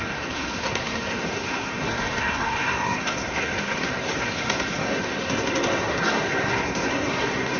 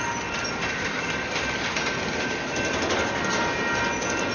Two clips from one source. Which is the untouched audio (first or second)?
second